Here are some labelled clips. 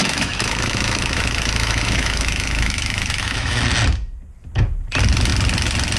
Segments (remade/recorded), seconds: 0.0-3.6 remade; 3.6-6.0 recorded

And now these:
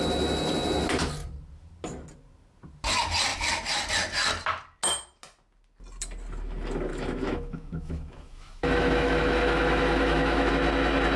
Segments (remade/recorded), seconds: 0.0-6.9 recorded; 6.9-10.5 remade; 10.5-11.2 recorded

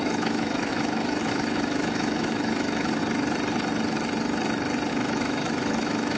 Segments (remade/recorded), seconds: 0.0-3.0 remade; 3.0-4.9 recorded; 4.9-6.2 remade

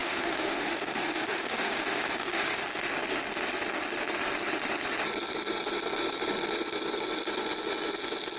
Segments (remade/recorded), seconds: 0.0-2.6 remade; 2.6-8.4 recorded